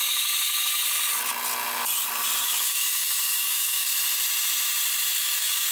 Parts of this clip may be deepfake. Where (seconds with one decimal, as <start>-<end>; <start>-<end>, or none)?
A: 0.0-0.8; 2.4-3.9; 5.1-5.7

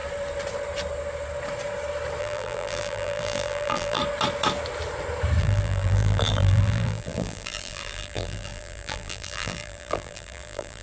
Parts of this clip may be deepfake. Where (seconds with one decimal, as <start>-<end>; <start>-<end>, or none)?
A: 2.2-4.0; 5.4-10.8

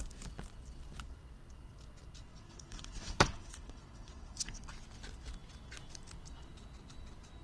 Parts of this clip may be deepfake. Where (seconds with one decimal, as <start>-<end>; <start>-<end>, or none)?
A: 2.3-4.6

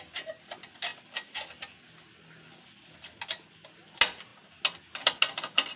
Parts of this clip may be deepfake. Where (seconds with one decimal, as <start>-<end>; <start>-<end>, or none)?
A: none

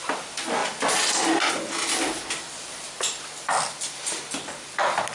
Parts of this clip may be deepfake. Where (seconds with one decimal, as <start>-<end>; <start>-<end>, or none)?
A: none

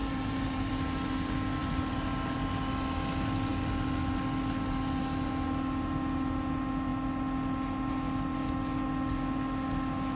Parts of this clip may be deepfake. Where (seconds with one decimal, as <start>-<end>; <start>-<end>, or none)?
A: 0.0-0.7; 1.6-2.5

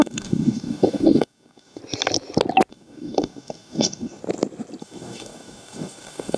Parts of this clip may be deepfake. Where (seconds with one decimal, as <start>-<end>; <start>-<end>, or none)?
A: 0.0-1.8; 2.7-4.2; 4.8-6.4